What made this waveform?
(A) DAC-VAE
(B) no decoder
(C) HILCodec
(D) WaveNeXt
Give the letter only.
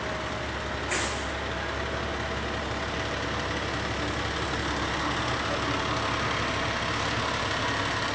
B